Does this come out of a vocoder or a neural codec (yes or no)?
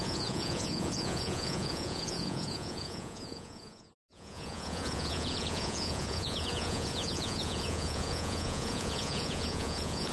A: yes